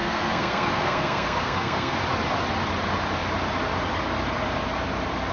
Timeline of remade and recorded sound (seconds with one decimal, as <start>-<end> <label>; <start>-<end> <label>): 0.0-2.0 remade; 2.0-5.3 recorded